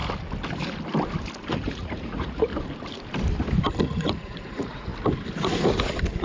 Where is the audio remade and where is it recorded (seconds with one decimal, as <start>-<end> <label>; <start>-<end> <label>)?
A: 0.0-1.5 recorded; 1.5-2.5 remade; 2.5-3.8 recorded; 3.8-4.9 remade; 4.9-6.2 recorded